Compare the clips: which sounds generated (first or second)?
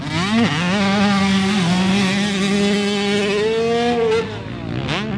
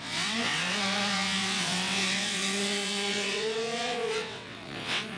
second